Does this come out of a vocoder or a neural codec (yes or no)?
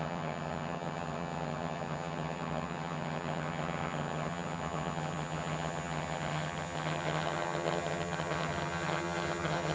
yes